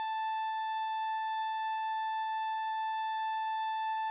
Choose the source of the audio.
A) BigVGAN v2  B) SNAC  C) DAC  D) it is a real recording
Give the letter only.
B